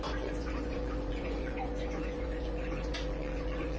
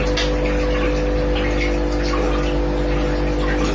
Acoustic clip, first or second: second